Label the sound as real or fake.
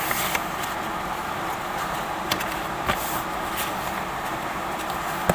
real